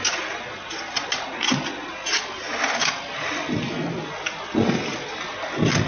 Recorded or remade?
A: recorded